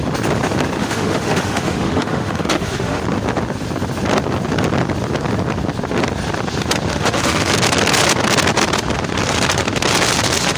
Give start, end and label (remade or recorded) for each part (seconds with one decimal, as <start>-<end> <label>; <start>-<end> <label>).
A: 0.0-0.8 recorded; 0.8-3.0 remade; 3.0-6.9 recorded; 6.9-7.5 remade; 7.5-10.6 recorded